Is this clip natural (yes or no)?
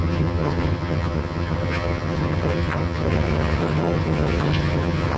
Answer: no